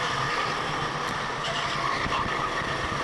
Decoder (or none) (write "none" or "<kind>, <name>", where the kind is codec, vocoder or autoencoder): none